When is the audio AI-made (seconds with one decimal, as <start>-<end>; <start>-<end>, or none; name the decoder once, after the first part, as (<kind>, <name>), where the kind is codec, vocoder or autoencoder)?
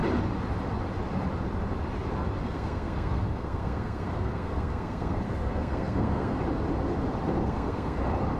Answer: 2.4-6.4 (codec, SNAC); 7.4-8.0